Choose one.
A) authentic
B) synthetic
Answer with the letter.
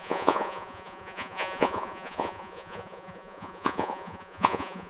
B